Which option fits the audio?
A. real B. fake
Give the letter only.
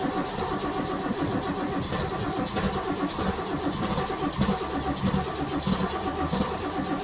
A